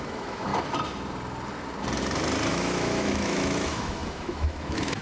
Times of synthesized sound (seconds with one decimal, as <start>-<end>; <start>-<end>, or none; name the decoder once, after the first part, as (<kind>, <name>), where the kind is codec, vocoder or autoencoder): 0.0-0.5 (autoencoder, DAC-VAE); 2.5-5.0